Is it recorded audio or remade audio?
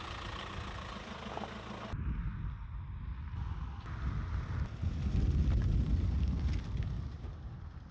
recorded